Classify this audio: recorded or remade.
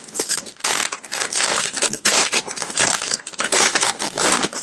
remade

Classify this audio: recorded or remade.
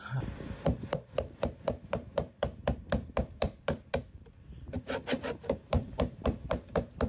remade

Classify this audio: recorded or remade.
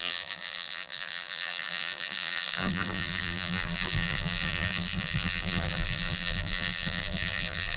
remade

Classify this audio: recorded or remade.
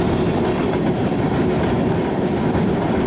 remade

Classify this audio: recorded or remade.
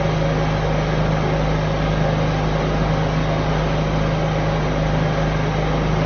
recorded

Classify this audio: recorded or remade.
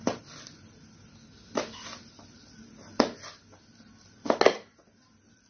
recorded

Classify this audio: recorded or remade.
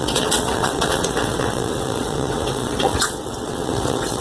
remade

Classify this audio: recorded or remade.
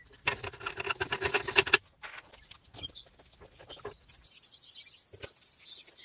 recorded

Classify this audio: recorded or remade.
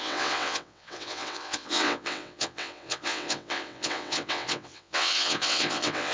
remade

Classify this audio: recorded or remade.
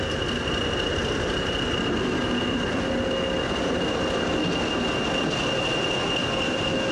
recorded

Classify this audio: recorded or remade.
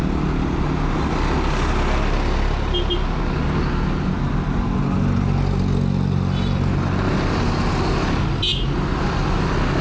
recorded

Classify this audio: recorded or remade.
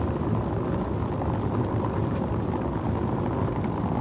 recorded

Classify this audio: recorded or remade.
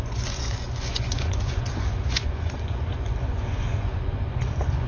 remade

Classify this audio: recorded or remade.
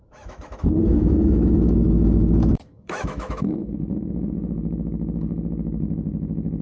remade